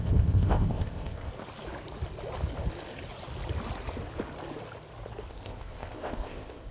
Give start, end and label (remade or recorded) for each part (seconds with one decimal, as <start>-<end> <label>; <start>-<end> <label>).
0.0-1.3 remade; 1.3-5.3 recorded; 5.3-6.7 remade